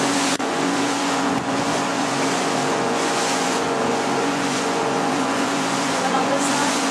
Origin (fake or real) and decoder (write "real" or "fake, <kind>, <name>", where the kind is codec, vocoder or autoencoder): fake, vocoder, Vocos